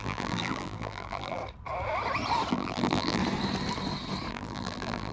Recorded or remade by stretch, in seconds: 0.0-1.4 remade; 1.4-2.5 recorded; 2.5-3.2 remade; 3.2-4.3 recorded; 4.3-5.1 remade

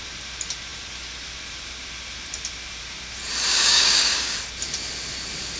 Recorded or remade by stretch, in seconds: 0.0-3.5 recorded; 3.5-4.4 remade; 4.4-5.6 recorded